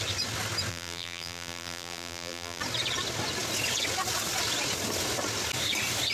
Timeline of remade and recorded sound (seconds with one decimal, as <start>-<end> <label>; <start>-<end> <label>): 0.0-0.7 recorded; 0.7-2.6 remade; 2.6-6.1 recorded